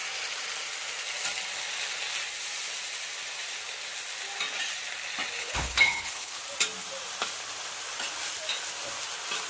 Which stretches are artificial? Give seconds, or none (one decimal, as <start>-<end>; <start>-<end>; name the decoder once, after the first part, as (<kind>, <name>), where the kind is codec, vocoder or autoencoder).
5.4-6.4 (codec, HILCodec)